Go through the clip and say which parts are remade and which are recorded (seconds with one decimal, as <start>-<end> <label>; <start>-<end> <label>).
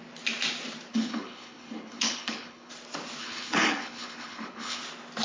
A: 0.0-0.9 recorded; 0.9-2.7 remade; 2.7-3.2 recorded; 3.2-4.8 remade; 4.8-5.2 recorded